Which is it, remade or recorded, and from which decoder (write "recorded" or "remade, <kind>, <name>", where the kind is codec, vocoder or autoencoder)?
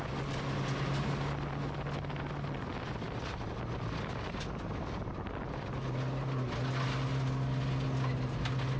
recorded